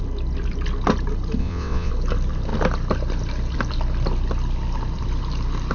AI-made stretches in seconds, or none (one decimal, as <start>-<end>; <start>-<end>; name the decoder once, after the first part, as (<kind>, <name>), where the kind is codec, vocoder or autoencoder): 1.4-1.9 (vocoder, WaveNeXt)